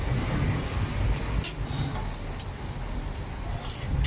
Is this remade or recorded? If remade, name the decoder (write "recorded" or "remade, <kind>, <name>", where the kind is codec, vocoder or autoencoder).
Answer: recorded